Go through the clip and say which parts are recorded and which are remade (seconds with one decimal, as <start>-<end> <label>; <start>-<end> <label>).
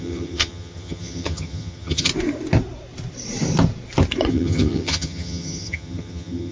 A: 0.0-2.1 remade; 2.1-4.3 recorded; 4.3-6.5 remade